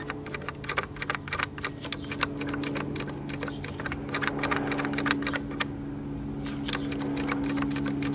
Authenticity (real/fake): real